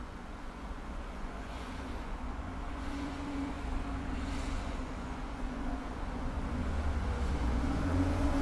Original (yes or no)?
no